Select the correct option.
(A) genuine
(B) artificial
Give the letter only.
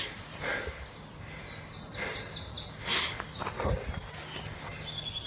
A